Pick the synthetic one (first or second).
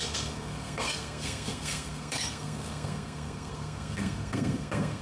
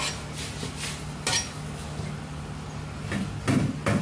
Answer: first